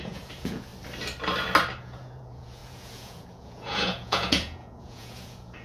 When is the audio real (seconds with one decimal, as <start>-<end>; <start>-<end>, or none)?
0.7-1.8